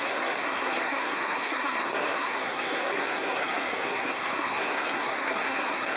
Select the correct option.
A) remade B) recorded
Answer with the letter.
A